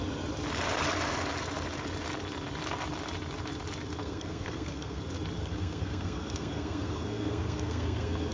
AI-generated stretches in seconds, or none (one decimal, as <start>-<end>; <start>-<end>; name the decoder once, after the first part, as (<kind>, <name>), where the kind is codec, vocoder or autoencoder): 4.0-5.0 (codec, SNAC); 5.4-8.3